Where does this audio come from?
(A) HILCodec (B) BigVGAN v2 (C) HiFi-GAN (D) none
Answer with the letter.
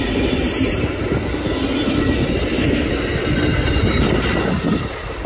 D